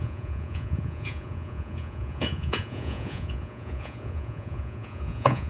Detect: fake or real fake